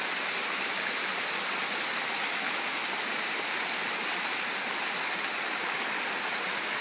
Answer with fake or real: real